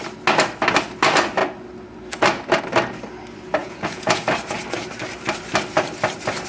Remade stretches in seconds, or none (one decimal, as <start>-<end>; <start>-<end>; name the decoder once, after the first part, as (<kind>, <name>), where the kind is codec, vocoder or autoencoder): 3.6-4.2 (vocoder, Vocos)